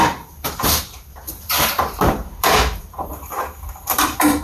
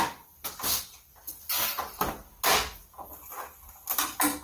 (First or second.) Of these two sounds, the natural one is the second